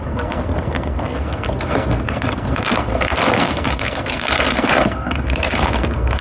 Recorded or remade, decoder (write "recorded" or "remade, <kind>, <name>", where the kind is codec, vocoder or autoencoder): remade, codec, SNAC